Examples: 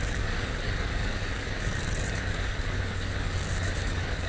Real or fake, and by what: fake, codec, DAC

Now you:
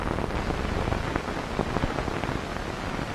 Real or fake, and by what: real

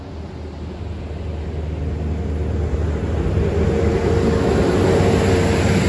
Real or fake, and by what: real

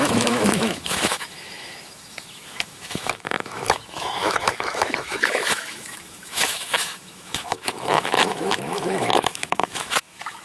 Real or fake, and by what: fake, autoencoder, DAC-VAE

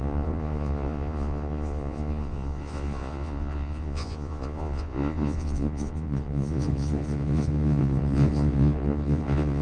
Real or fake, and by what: fake, vocoder, Vocos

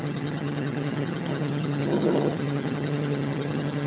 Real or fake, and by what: fake, vocoder, HiFi-GAN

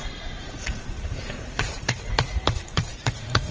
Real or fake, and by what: fake, vocoder, Vocos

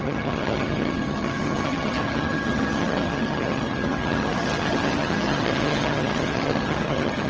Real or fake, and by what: fake, vocoder, HiFi-GAN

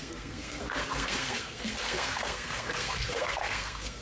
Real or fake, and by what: fake, codec, SNAC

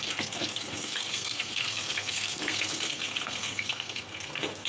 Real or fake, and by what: fake, codec, SNAC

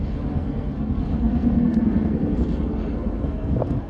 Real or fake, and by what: fake, codec, SNAC